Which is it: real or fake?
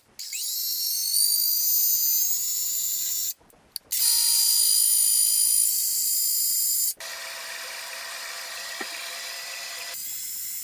real